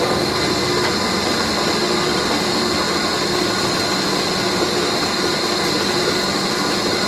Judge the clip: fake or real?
real